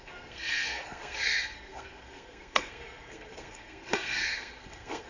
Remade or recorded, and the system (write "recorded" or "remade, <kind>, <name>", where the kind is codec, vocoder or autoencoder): remade, codec, SNAC